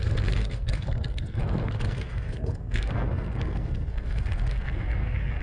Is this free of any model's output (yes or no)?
no